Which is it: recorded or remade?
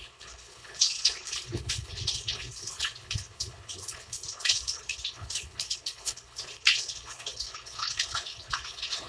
remade